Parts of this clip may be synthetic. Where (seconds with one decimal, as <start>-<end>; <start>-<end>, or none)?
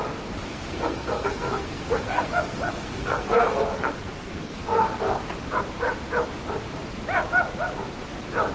0.5-5.2